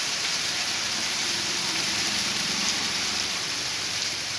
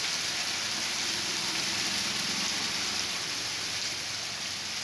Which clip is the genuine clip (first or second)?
second